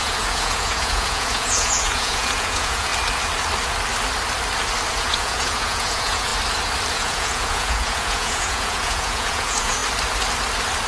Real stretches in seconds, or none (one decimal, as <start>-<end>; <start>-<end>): 2.9-4.9; 6.3-6.9; 9.8-10.9